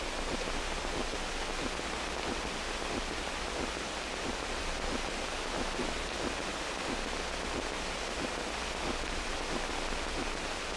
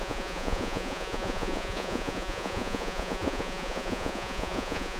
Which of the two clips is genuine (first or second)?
first